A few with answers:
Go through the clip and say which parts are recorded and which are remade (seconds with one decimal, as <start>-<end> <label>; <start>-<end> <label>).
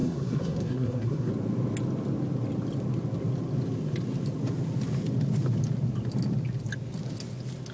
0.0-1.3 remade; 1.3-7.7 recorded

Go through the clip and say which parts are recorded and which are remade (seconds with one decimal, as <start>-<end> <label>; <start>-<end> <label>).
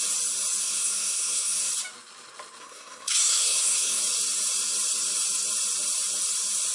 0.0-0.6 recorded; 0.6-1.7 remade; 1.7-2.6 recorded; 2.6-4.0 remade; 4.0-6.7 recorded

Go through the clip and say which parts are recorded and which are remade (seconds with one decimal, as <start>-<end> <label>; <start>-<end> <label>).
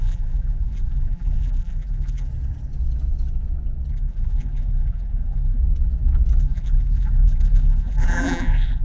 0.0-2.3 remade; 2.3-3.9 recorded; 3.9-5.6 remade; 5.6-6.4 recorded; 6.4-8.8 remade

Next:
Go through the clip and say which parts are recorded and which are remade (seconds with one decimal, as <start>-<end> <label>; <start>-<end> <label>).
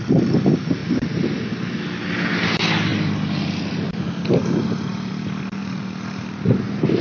0.0-5.6 recorded; 5.6-7.0 remade